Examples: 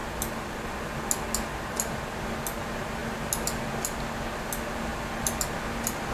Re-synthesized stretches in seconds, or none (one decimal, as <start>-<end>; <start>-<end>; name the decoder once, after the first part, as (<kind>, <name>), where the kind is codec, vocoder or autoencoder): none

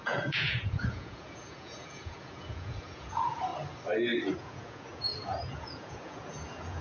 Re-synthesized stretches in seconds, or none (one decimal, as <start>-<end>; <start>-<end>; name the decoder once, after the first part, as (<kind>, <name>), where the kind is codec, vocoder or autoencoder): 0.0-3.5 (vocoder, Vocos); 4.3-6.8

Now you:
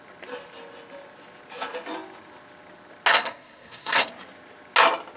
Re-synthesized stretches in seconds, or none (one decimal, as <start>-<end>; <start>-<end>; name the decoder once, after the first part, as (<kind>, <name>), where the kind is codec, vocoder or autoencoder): 3.1-4.1 (codec, SNAC)

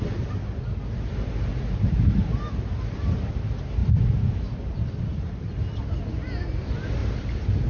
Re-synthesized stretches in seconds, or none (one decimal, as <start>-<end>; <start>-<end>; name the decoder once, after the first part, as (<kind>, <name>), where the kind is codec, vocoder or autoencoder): none